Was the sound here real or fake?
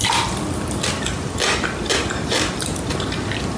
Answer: fake